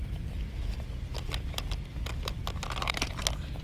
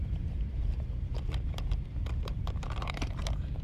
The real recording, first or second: first